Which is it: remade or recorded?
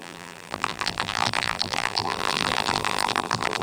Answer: remade